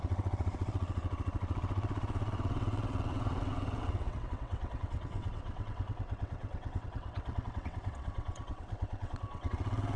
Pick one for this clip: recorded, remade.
remade